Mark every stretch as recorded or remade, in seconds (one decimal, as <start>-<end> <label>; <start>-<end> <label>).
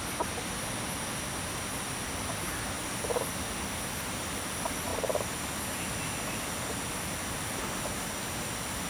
0.0-8.9 recorded